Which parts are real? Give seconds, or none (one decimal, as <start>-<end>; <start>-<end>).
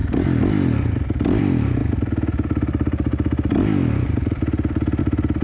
0.0-5.4